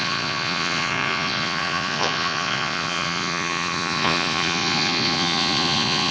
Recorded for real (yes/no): no